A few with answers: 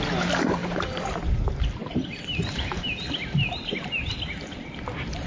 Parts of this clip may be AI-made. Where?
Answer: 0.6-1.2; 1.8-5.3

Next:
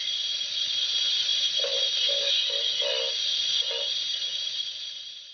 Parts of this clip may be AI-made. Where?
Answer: 1.3-2.7

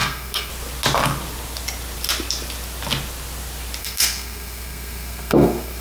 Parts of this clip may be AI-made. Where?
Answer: 0.0-0.5; 3.8-5.8

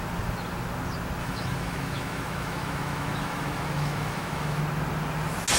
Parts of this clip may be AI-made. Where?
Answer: 1.2-4.6

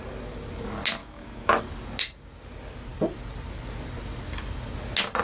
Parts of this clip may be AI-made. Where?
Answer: 1.0-1.6

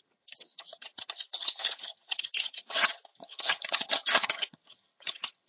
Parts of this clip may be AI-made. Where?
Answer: 0.0-5.5